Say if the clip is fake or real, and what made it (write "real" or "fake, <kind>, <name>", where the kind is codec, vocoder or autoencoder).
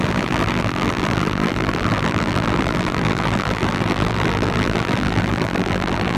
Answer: fake, vocoder, BigVGAN v2